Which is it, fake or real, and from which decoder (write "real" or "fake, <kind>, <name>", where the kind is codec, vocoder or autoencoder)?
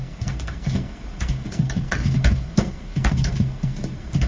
fake, codec, SNAC